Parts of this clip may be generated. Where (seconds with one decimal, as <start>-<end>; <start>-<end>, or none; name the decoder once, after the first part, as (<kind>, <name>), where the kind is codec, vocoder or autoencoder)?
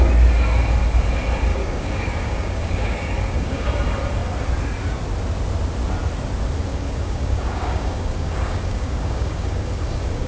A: 1.5-3.7 (codec, DAC); 6.7-10.3